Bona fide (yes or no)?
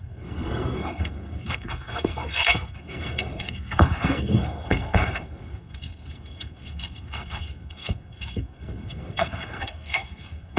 no